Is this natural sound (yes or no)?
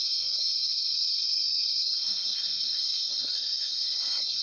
no